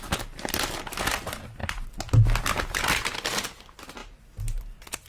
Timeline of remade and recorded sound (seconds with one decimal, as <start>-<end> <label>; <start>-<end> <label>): 0.0-5.1 recorded